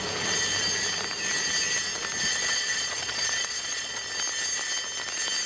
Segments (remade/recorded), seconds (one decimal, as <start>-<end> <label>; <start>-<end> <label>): 0.0-2.3 recorded; 2.3-4.0 remade; 4.0-5.5 recorded